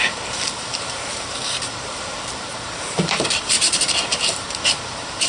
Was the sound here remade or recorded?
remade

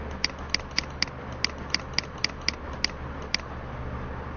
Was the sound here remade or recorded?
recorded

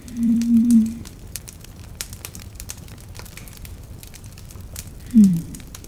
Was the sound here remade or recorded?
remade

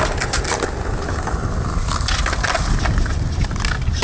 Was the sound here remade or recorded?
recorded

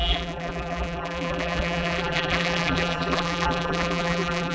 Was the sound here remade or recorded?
remade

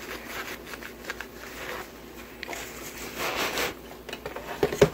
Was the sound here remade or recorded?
recorded